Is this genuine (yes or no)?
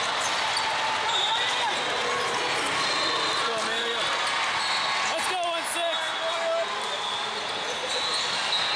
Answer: yes